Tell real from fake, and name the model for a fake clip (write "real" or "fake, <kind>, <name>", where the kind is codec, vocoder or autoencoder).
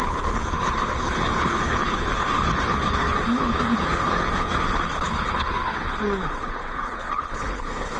fake, codec, HILCodec